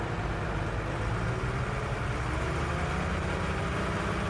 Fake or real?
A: real